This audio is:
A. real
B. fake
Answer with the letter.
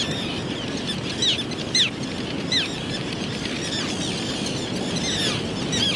A